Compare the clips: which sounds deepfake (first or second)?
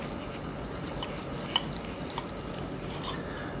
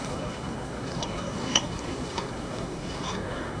second